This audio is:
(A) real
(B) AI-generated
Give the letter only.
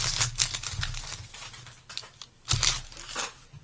A